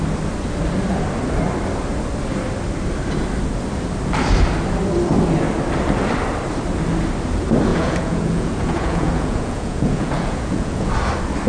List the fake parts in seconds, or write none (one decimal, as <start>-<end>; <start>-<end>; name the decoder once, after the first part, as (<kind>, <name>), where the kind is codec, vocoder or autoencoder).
7.7-10.9 (vocoder, Vocos)